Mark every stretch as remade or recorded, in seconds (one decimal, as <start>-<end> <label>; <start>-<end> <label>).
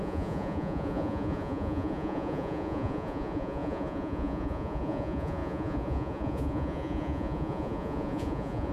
0.0-8.7 remade